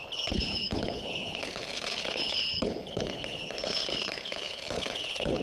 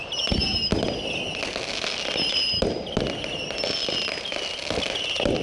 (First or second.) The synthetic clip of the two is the first